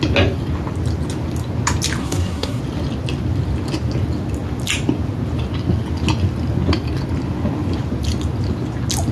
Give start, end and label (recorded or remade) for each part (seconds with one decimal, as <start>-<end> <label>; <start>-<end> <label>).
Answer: 0.0-2.0 recorded; 2.0-2.6 remade; 2.6-9.1 recorded